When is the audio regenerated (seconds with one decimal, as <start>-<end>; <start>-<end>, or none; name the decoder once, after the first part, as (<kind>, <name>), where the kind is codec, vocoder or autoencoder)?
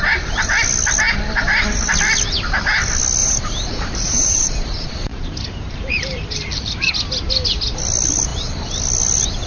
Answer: 3.2-6.9 (vocoder, BigVGAN v2)